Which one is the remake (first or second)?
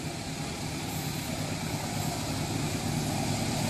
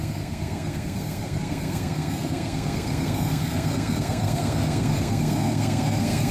second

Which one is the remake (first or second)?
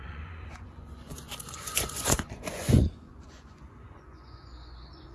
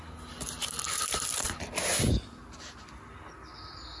first